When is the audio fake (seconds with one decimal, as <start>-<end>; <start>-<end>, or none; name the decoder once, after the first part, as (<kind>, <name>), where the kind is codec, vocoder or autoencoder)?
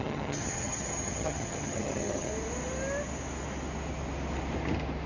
0.0-2.3 (vocoder, HiFi-GAN)